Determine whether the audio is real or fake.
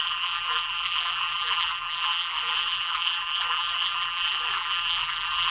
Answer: fake